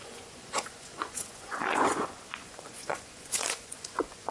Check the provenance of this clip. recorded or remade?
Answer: remade